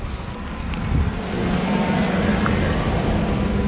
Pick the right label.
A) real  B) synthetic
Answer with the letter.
A